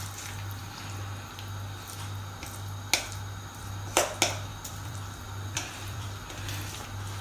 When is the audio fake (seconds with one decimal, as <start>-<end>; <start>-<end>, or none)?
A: 4.5-6.4